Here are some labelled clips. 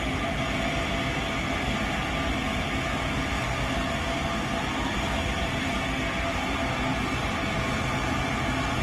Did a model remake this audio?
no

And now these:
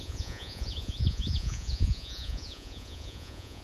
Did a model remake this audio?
yes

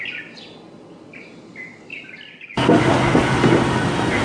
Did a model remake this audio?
no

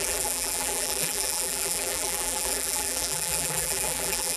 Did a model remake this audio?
yes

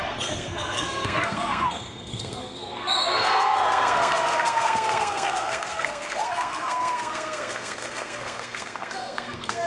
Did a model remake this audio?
yes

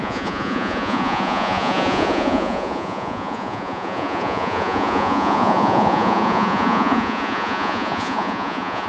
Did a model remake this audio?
yes